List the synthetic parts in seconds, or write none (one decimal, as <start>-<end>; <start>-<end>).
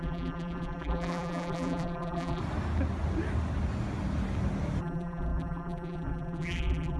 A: 0.0-2.4; 4.8-7.0